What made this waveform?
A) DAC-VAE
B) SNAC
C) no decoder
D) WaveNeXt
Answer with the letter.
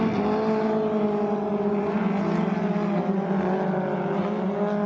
C